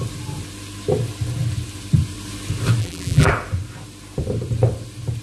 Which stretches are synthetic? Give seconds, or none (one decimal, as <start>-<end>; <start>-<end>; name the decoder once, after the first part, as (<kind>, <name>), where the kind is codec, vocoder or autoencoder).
2.8-3.3 (vocoder, BigVGAN v2)